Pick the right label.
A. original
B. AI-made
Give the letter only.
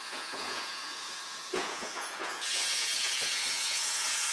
B